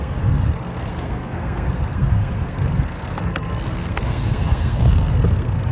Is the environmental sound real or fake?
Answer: fake